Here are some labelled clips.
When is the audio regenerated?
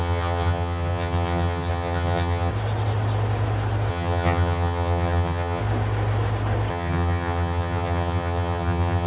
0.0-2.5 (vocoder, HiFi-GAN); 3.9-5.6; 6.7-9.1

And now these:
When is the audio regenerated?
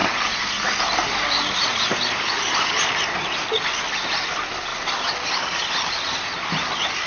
none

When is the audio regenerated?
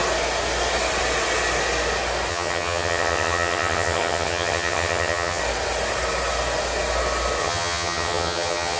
2.3-5.4 (vocoder, HiFi-GAN); 7.4-8.8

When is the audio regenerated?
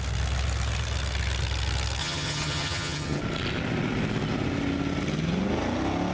2.0-3.2 (vocoder, HiFi-GAN)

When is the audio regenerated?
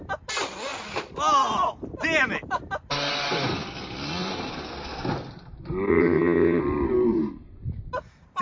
5.9-6.6 (vocoder, HiFi-GAN)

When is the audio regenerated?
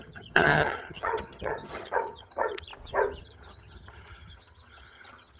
0.0-2.7 (vocoder, HiFi-GAN); 3.2-5.4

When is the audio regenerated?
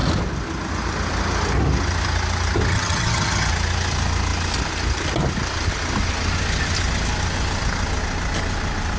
2.7-3.5 (vocoder, HiFi-GAN)